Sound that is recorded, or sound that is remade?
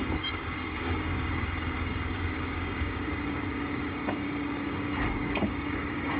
remade